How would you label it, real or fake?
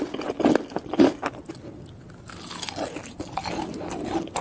real